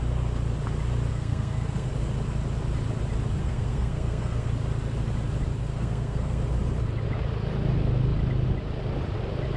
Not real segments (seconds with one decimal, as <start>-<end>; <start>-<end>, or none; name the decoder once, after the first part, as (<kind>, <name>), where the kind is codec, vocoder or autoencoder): 1.1-1.9 (codec, SNAC); 3.4-4.5; 5.7-6.4